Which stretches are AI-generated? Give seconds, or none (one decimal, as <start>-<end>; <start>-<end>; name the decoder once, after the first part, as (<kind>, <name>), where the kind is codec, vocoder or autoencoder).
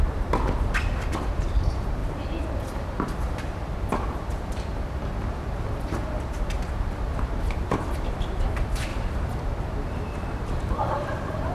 0.0-8.9 (vocoder, BigVGAN v2); 9.8-11.5